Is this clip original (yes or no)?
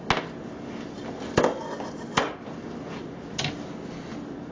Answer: yes